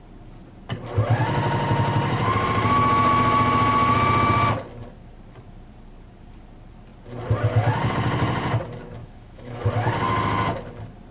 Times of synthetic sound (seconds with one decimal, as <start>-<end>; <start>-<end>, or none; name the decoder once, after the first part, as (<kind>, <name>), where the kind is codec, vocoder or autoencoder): 9.0-9.7 (autoencoder, DAC-VAE)